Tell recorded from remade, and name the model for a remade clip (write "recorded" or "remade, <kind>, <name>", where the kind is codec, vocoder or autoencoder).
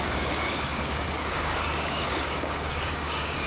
remade, codec, DAC